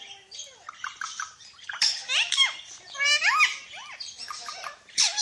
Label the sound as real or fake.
fake